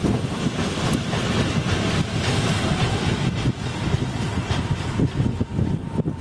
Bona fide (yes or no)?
yes